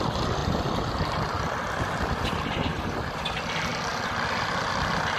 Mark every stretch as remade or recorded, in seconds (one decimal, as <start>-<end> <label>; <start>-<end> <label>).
0.0-0.4 recorded; 0.4-2.8 remade; 2.8-5.2 recorded